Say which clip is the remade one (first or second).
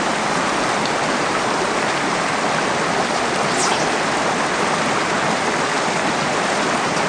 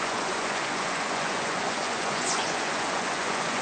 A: second